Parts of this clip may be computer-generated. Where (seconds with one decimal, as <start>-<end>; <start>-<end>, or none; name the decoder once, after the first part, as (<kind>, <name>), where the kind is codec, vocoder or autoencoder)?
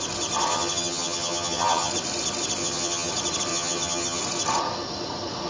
0.5-1.9 (vocoder, HiFi-GAN); 2.6-3.1; 3.5-4.2